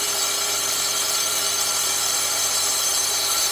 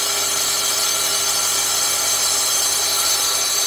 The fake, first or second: first